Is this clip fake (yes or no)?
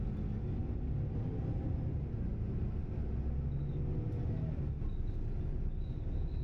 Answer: no